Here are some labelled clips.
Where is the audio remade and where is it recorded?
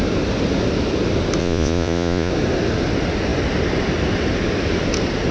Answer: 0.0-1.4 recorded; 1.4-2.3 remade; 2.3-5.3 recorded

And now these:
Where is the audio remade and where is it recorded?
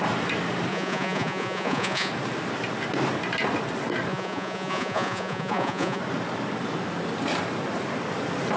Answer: 0.0-0.7 recorded; 0.7-2.1 remade; 2.1-4.1 recorded; 4.1-6.0 remade; 6.0-8.6 recorded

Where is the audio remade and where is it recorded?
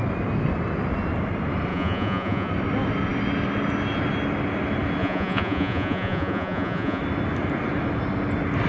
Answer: 0.0-1.7 recorded; 1.7-2.5 remade; 2.5-5.0 recorded; 5.0-7.0 remade; 7.0-8.7 recorded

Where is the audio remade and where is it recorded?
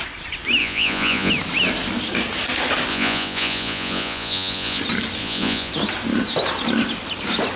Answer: 0.0-0.6 recorded; 0.6-1.3 remade; 1.3-2.9 recorded; 2.9-4.8 remade; 4.8-5.2 recorded; 5.2-5.7 remade; 5.7-7.6 recorded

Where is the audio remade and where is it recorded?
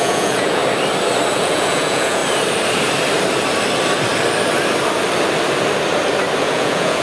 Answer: 0.0-0.6 remade; 0.6-1.3 recorded; 1.3-2.2 remade; 2.2-6.4 recorded; 6.4-7.0 remade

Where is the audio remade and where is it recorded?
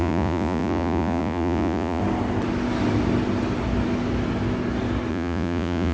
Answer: 0.0-2.0 remade; 2.0-5.1 recorded; 5.1-5.9 remade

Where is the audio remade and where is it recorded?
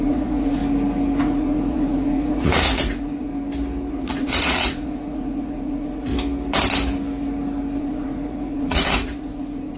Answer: 0.0-0.6 remade; 0.6-1.2 recorded; 1.2-3.3 remade; 3.3-3.9 recorded; 3.9-6.1 remade; 6.1-7.8 recorded; 7.8-9.8 remade